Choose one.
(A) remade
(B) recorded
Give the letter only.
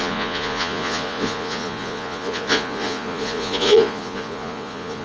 A